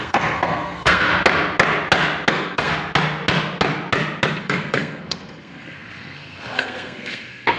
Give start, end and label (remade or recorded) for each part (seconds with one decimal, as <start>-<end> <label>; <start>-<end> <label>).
0.0-1.1 remade; 1.1-2.3 recorded; 2.3-2.7 remade; 2.7-4.4 recorded; 4.4-7.6 remade